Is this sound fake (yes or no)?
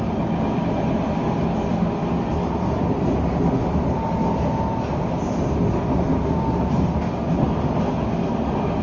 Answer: no